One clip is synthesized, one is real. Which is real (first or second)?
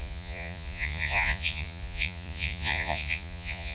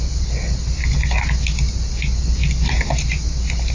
second